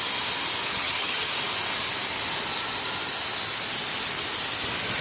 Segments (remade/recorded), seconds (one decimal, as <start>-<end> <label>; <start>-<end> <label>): 0.0-0.7 recorded; 0.7-1.3 remade; 1.3-5.0 recorded